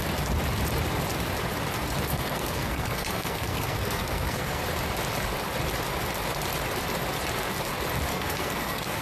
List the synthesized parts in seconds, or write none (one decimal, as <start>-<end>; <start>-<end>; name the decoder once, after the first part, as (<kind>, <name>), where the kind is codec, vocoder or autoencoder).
2.1-4.6 (codec, SNAC); 8.1-9.0